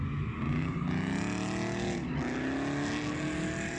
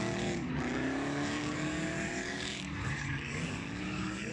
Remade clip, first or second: second